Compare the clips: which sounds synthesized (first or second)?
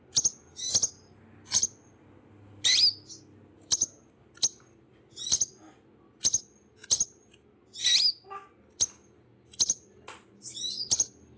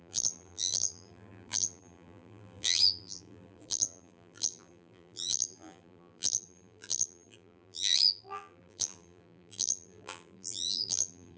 second